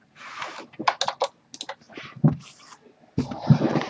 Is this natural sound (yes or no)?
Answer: yes